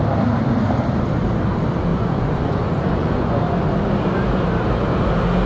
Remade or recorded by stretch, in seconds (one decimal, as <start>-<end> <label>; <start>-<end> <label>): 0.0-1.9 recorded; 1.9-3.4 remade; 3.4-5.5 recorded

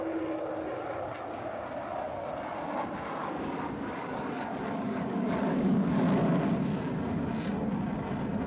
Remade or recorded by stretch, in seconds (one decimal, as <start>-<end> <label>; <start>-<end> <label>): 0.0-3.2 recorded; 3.2-6.5 remade; 6.5-8.5 recorded

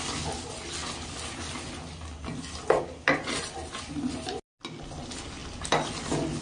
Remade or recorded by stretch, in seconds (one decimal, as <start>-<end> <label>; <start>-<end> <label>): 0.0-6.4 recorded

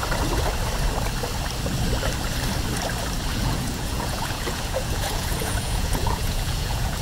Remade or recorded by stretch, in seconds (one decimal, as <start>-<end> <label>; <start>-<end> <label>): 0.0-3.3 recorded; 3.3-7.0 remade

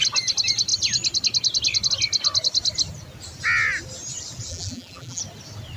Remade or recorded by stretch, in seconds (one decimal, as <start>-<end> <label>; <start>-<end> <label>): 0.0-4.5 recorded; 4.5-5.2 remade; 5.2-5.8 recorded

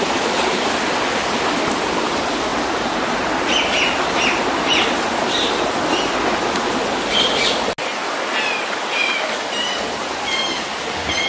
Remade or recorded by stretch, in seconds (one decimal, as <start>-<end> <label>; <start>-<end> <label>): 0.0-11.3 recorded